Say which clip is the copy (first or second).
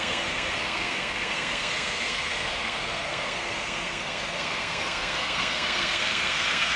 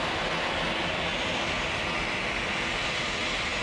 first